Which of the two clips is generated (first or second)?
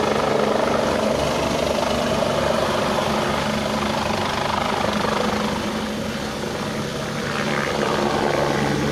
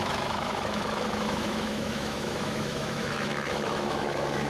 second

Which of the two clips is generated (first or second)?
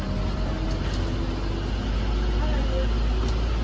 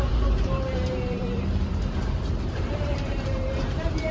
second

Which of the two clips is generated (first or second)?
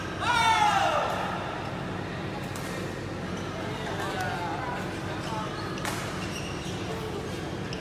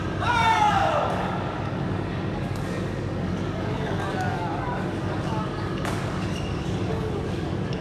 second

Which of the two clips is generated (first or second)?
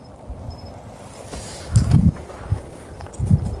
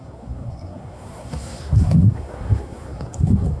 second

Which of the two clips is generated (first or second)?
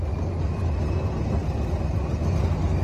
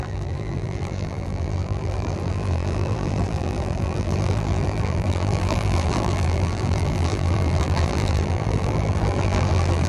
second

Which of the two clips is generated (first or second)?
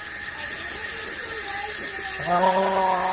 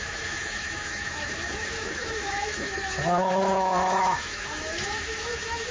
second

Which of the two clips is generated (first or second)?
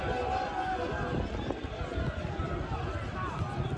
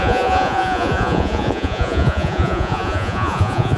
second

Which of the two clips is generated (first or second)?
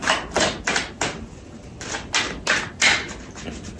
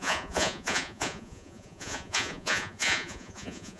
second